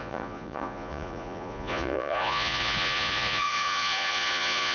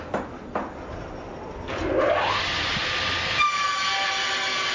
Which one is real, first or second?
second